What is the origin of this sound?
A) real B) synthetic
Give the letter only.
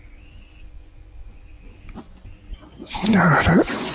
B